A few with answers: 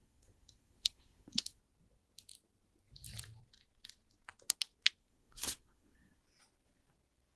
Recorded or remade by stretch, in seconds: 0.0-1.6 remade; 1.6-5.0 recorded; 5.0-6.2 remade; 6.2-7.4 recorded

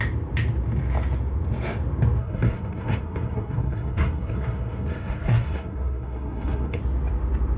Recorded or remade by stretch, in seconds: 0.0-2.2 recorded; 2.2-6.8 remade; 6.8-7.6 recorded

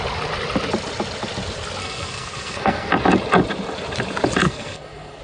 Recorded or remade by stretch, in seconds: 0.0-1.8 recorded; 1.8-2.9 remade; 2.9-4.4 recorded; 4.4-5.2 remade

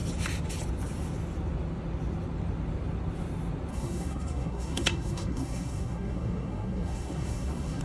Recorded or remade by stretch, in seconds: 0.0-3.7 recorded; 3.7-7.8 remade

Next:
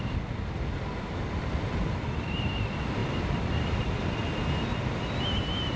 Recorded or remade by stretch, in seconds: 0.0-5.8 recorded